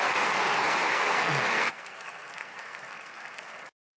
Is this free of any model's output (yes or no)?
no